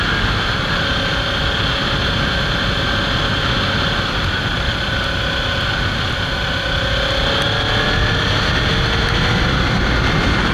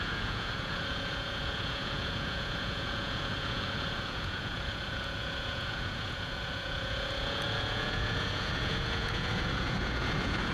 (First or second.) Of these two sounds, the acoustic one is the first